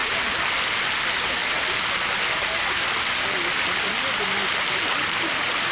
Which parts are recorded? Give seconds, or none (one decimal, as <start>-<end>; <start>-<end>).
0.0-5.7

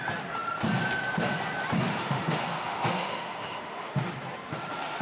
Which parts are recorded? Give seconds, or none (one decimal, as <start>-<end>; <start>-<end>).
0.0-2.0; 4.1-5.0

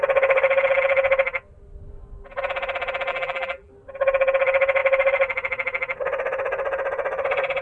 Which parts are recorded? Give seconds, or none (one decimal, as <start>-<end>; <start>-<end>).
0.0-3.1; 3.7-7.6

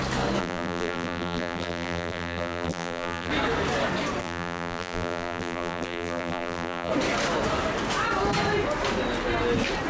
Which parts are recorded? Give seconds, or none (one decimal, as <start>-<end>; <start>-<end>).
0.0-0.4; 3.3-4.2; 6.9-9.9

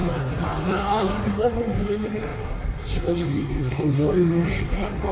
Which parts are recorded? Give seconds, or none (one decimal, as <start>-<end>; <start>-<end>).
none